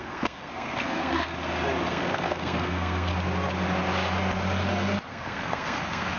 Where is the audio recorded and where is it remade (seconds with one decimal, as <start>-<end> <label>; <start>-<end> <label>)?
0.0-1.3 remade; 1.3-1.9 recorded; 1.9-3.1 remade; 3.1-5.1 recorded; 5.1-6.2 remade